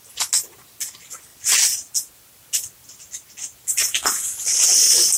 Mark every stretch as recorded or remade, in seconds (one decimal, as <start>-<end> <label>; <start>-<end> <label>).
0.0-5.2 recorded